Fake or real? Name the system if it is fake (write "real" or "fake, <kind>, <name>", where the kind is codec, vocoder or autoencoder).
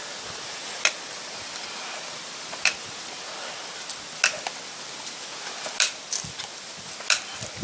real